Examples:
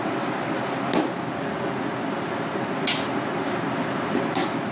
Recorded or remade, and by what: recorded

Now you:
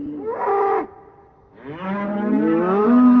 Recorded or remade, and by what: recorded